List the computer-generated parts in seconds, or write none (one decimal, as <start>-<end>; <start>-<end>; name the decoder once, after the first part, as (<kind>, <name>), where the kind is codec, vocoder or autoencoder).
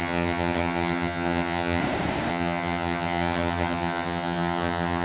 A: 0.0-1.8 (vocoder, HiFi-GAN); 2.3-5.0